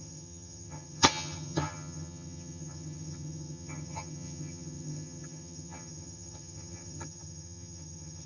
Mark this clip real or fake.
fake